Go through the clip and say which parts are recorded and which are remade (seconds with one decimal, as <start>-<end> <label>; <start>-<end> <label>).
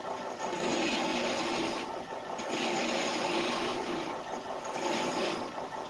0.0-5.9 remade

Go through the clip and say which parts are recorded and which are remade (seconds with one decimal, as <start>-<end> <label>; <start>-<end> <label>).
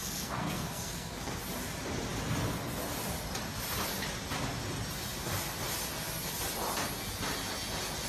0.0-1.4 remade; 1.4-8.1 recorded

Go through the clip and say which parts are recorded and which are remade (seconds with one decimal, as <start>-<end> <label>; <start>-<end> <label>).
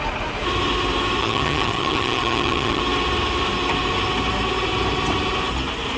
0.0-1.2 recorded; 1.2-2.8 remade; 2.8-6.0 recorded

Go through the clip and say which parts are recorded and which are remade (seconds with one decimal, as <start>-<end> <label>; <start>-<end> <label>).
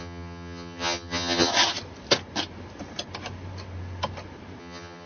0.0-1.5 remade; 1.5-4.6 recorded; 4.6-5.1 remade